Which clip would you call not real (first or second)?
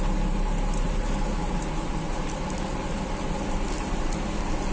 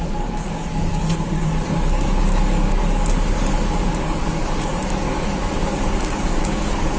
second